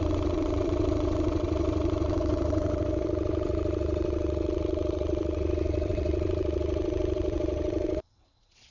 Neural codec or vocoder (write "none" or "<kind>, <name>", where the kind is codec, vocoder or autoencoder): vocoder, WaveNeXt